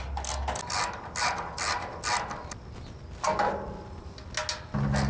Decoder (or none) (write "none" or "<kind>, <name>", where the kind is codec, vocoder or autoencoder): none